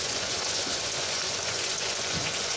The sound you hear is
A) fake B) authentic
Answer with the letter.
A